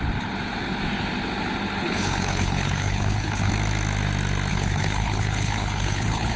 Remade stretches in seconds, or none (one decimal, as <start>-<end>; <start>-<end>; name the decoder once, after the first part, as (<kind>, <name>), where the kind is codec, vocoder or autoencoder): 1.8-3.5 (codec, HILCodec); 4.5-6.4